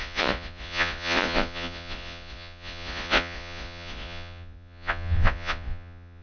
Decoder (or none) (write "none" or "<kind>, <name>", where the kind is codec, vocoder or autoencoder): vocoder, Vocos